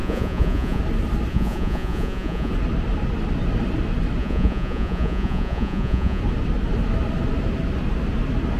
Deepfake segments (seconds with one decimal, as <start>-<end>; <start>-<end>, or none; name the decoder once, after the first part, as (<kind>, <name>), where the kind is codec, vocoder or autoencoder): 0.0-0.8 (vocoder, Vocos); 1.3-2.5; 4.2-6.2